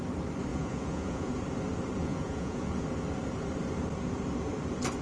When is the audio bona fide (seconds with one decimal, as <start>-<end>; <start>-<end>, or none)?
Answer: 0.0-0.5; 1.3-2.0; 2.7-5.0